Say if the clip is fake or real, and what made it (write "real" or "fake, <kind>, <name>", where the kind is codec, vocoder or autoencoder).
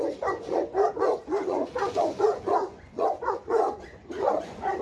fake, vocoder, Vocos